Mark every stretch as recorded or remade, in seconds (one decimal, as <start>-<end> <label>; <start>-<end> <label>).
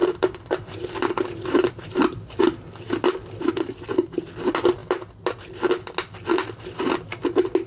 0.0-2.4 remade; 2.4-7.7 recorded